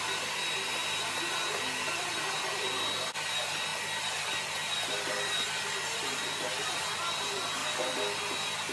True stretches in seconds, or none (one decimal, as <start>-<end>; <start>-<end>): 0.0-8.7